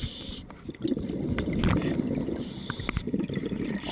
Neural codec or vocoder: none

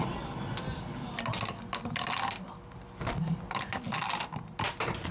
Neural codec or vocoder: none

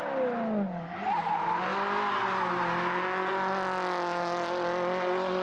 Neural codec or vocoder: none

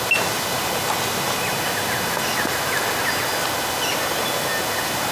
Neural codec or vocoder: none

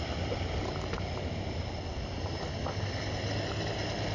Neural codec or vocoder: none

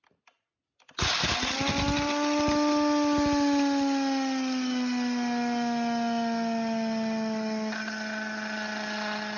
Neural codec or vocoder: none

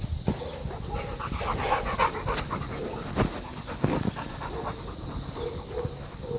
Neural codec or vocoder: none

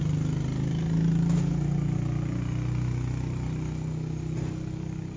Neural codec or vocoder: none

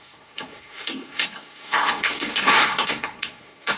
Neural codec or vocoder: codec, SNAC